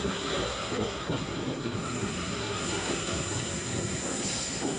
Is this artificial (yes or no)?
yes